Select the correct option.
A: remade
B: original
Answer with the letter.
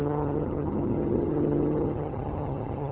A